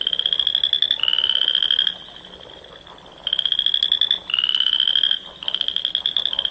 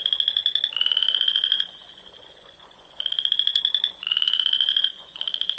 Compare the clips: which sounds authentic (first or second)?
first